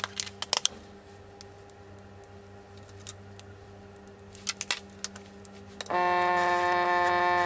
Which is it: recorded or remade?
recorded